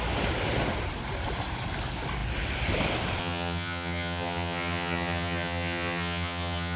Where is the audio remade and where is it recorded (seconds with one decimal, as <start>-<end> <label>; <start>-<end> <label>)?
0.0-3.2 recorded; 3.2-6.8 remade